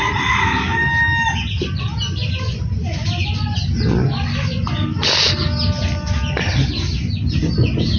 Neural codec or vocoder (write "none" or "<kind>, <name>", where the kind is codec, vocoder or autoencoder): none